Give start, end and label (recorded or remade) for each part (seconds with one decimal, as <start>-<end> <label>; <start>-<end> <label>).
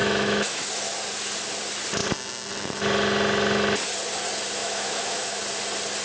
0.0-0.7 remade; 0.7-4.6 recorded; 4.6-5.4 remade; 5.4-6.0 recorded